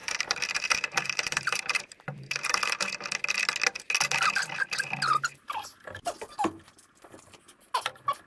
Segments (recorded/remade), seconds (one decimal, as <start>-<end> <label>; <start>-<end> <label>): 0.0-2.6 remade; 2.6-8.3 recorded